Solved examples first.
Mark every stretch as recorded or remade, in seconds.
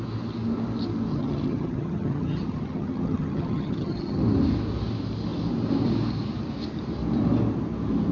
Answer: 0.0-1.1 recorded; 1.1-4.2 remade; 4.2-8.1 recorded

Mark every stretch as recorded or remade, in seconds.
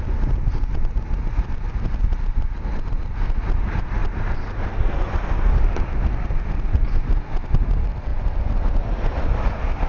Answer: 0.0-9.9 recorded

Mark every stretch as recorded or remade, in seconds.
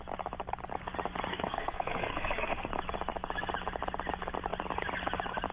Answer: 0.0-1.3 recorded; 1.3-2.7 remade; 2.7-5.5 recorded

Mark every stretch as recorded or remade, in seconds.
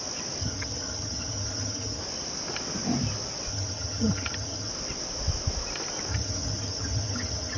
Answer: 0.0-0.4 recorded; 0.4-2.0 remade; 2.0-3.5 recorded; 3.5-4.7 remade; 4.7-6.1 recorded; 6.1-7.6 remade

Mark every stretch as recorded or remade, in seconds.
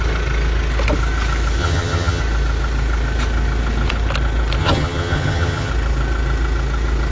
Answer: 0.0-1.6 recorded; 1.6-2.2 remade; 2.2-4.6 recorded; 4.6-5.7 remade; 5.7-7.1 recorded